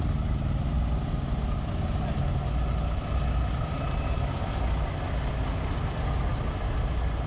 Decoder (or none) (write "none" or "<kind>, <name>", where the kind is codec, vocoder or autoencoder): none